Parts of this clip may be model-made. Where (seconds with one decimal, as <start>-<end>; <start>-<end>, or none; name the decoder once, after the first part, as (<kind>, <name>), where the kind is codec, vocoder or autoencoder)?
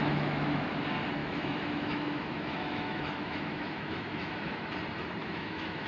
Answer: 0.0-0.7 (autoencoder, DAC-VAE); 1.2-4.7; 5.2-5.9